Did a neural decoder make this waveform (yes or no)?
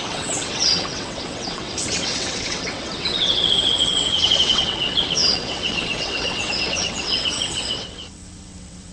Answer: yes